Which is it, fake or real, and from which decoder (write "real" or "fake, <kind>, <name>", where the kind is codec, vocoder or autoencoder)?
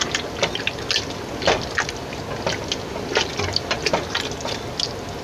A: real